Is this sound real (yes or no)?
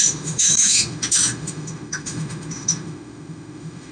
no